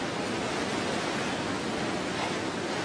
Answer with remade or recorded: recorded